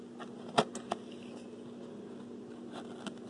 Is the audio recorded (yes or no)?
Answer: yes